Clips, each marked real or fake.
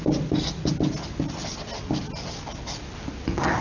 real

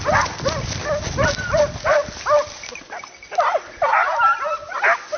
real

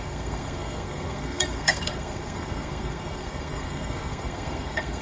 fake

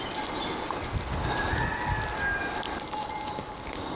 real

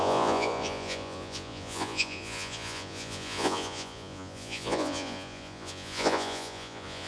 fake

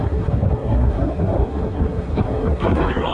fake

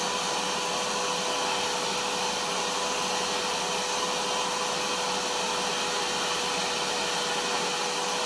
real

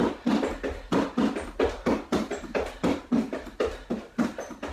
real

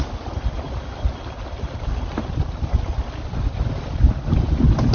fake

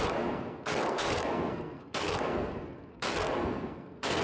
fake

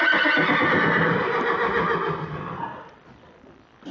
real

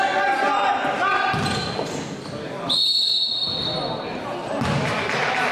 real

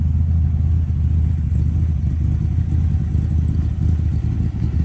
real